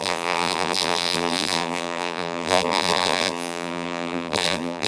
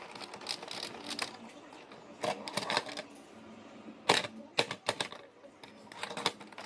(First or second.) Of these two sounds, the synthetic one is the first